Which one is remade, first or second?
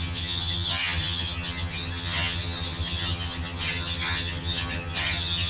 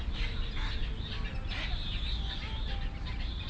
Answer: first